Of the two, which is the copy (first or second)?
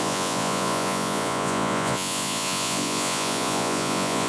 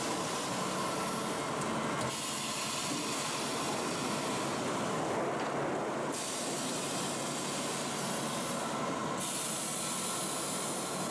first